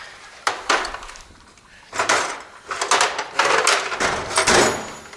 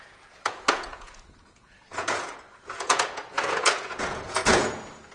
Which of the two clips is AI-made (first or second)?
second